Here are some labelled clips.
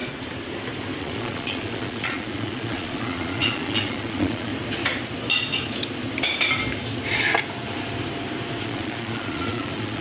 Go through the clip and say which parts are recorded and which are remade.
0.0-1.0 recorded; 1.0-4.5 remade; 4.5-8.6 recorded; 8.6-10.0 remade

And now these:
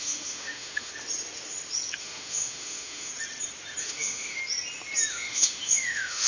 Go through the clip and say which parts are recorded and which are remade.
0.0-0.9 remade; 0.9-2.0 recorded; 2.0-3.1 remade; 3.1-3.8 recorded; 3.8-4.4 remade; 4.4-5.1 recorded; 5.1-6.3 remade